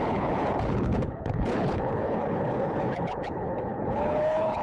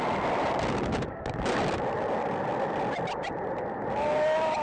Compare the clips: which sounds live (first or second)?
second